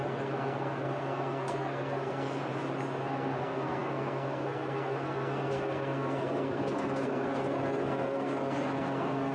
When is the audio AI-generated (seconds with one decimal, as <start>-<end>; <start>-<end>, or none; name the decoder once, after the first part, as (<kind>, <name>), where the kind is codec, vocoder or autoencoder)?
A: 0.0-2.4 (codec, SNAC); 3.0-9.3